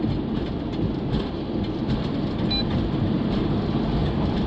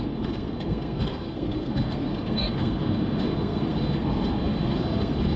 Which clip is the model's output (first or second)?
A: second